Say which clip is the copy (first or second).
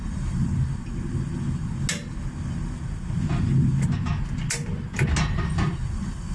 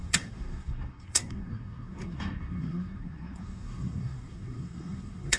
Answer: second